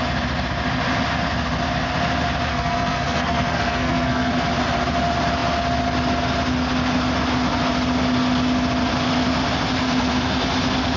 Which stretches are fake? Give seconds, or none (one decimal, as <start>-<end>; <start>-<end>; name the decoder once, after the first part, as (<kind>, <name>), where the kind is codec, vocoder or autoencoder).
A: 2.5-4.3 (codec, SNAC)